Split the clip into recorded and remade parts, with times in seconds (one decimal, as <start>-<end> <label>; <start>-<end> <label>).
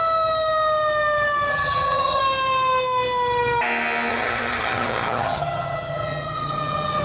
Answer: 0.0-1.5 recorded; 1.5-2.2 remade; 2.2-4.1 recorded; 4.1-7.0 remade